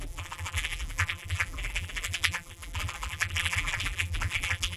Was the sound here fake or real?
fake